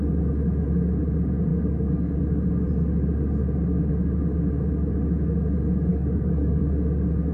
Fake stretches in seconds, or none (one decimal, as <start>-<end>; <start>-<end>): 1.5-2.2; 5.9-6.6